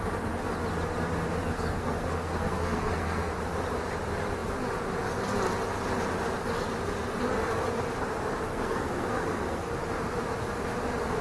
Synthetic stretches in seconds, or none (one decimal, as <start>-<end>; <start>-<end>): 1.4-3.3; 8.5-9.7